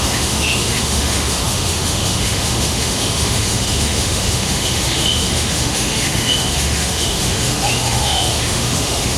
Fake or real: fake